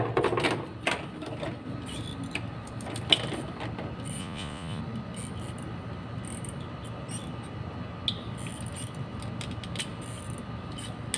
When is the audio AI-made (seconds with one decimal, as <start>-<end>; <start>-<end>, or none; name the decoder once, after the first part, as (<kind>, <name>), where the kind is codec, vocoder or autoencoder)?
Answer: 4.2-4.8 (vocoder, Vocos)